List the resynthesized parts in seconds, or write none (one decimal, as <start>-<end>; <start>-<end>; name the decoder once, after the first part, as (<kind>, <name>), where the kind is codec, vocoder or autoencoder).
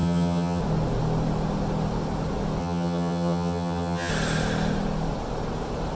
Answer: 0.0-0.6 (vocoder, HiFi-GAN); 2.6-4.1